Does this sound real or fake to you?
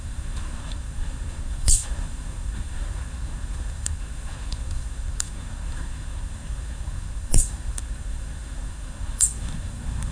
fake